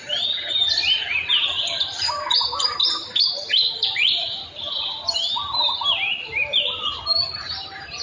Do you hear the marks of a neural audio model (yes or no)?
yes